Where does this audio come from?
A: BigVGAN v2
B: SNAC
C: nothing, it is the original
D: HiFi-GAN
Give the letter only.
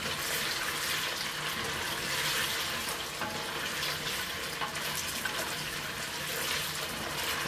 C